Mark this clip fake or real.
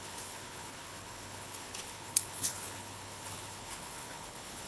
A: fake